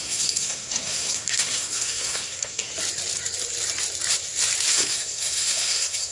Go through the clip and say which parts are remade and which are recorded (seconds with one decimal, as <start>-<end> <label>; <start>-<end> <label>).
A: 0.0-2.7 remade; 2.7-4.7 recorded; 4.7-6.1 remade